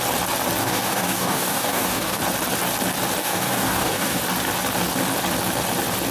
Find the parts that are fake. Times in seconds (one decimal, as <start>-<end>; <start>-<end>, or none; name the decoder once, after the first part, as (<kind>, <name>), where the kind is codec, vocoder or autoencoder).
0.6-2.2 (codec, DAC); 3.2-4.2